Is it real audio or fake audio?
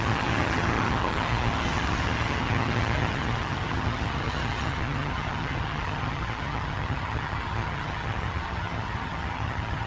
fake